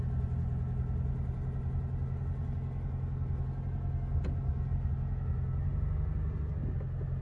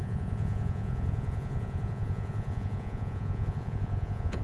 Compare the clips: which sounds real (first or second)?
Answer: first